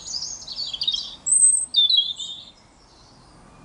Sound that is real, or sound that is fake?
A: real